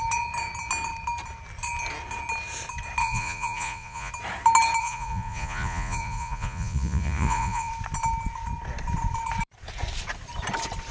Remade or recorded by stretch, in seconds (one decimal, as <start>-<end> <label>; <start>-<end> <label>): 0.0-3.0 recorded; 3.0-4.1 remade; 4.1-4.8 recorded; 4.8-7.7 remade; 7.7-10.9 recorded